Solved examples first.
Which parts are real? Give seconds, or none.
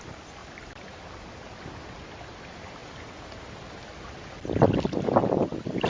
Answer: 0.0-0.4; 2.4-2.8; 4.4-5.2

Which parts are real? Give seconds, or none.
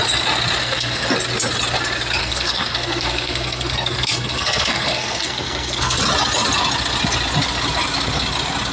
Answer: 0.0-0.6; 1.1-2.2; 6.0-8.7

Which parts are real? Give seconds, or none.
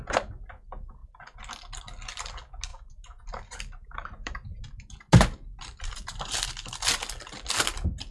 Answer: 0.0-2.7; 5.1-5.5; 6.5-8.1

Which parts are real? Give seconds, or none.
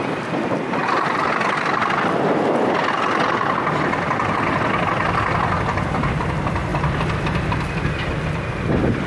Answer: 0.0-9.1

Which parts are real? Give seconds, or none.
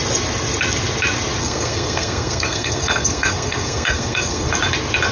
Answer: 0.0-1.4; 4.5-5.1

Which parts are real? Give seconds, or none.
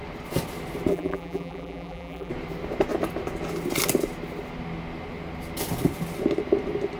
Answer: 0.0-0.9; 2.3-7.0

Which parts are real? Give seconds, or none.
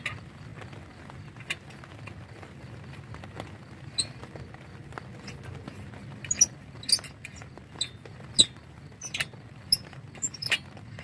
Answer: 0.0-11.0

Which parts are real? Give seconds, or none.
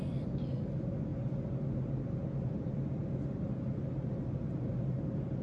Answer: 0.0-5.4